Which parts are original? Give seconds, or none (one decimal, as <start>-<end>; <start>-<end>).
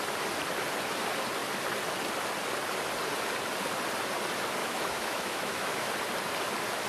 0.0-4.6; 5.9-6.9